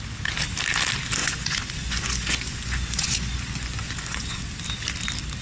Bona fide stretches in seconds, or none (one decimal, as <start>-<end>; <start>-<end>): 0.0-1.2; 4.4-5.4